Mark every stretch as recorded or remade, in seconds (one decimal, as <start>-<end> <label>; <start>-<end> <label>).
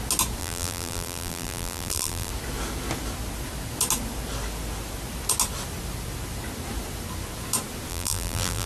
0.0-0.4 recorded; 0.4-2.3 remade; 2.3-7.9 recorded; 7.9-8.7 remade